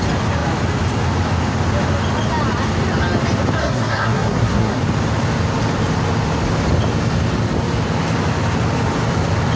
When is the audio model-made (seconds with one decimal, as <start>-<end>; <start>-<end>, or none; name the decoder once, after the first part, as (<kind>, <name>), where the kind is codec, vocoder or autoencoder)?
3.6-4.8 (codec, SNAC)